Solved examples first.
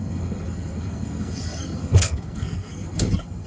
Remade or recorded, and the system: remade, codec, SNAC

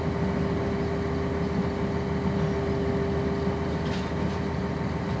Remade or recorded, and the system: recorded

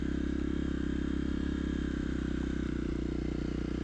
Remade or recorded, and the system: recorded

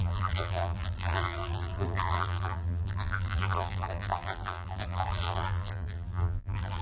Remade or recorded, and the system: remade, vocoder, BigVGAN v2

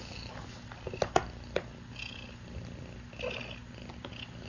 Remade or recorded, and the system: recorded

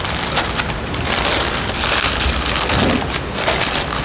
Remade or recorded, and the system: recorded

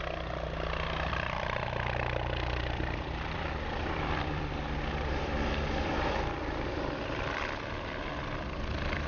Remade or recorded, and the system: remade, vocoder, BigVGAN v2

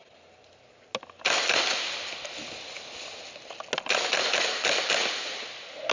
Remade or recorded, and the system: recorded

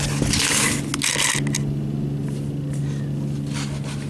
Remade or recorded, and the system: recorded